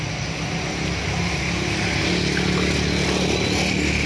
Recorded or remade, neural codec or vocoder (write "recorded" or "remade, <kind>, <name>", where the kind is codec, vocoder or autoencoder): recorded